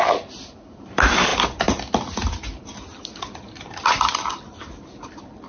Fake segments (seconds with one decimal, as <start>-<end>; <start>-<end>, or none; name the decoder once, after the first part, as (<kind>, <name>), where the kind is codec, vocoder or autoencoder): none